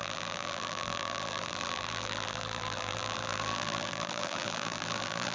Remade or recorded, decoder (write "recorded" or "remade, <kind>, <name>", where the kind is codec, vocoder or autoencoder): remade, vocoder, BigVGAN v2